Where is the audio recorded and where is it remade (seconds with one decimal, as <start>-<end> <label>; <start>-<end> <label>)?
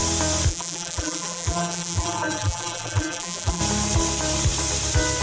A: 0.0-0.5 recorded; 0.5-3.6 remade; 3.6-5.2 recorded